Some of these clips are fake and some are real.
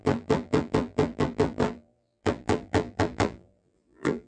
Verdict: fake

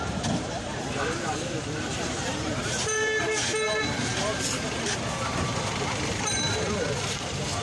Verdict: fake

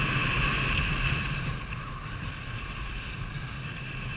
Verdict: real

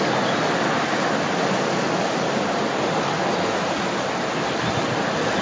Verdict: real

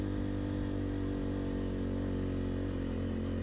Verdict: real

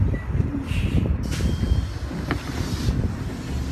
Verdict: real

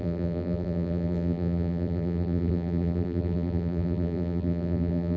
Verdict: fake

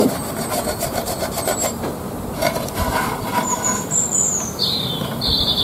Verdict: fake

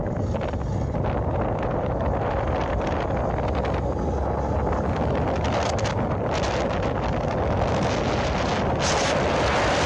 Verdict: real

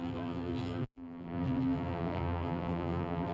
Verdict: fake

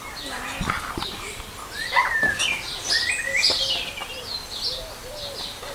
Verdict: real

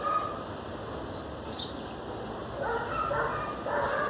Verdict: real